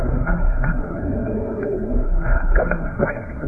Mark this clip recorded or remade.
remade